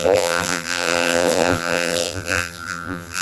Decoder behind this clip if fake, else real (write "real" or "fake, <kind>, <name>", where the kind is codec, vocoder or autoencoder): fake, vocoder, BigVGAN v2